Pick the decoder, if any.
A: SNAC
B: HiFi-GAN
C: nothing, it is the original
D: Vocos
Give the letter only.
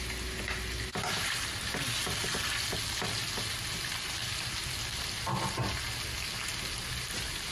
C